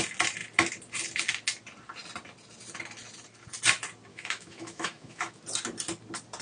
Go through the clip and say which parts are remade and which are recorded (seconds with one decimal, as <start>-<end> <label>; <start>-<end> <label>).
0.0-4.1 recorded; 4.1-5.4 remade; 5.4-6.4 recorded